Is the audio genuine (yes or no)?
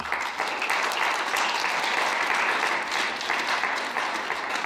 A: yes